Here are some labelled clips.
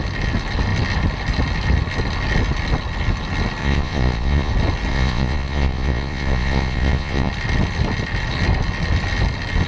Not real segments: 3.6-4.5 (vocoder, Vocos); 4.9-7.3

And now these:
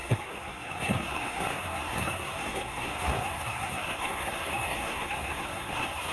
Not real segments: 0.0-6.1 (codec, SNAC)

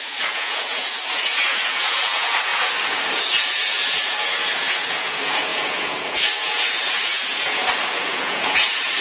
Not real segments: 0.0-9.0 (vocoder, Vocos)

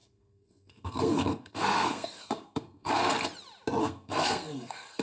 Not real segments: 0.0-3.0 (codec, SNAC); 3.8-5.0